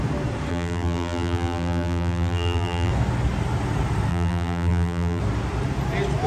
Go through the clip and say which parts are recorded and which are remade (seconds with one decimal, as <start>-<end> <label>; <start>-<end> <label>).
0.0-0.5 recorded; 0.5-2.9 remade; 2.9-4.1 recorded; 4.1-5.2 remade; 5.2-6.3 recorded